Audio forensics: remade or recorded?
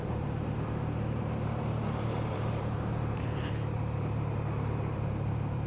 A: remade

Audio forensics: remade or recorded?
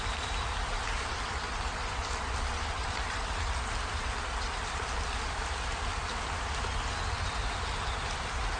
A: recorded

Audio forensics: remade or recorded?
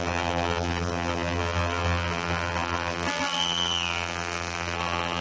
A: remade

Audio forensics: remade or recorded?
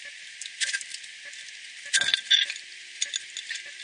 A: remade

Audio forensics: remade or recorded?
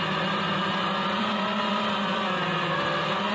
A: remade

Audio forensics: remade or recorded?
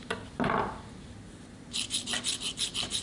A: remade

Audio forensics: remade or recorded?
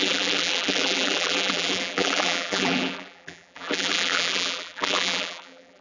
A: remade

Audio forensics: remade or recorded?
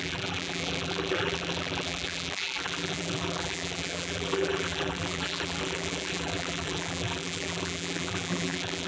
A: remade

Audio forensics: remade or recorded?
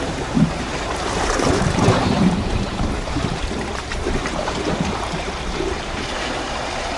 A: remade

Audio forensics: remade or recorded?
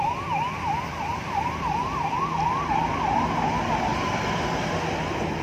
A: recorded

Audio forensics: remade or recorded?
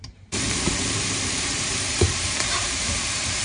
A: remade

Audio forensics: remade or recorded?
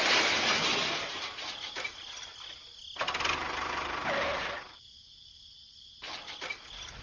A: recorded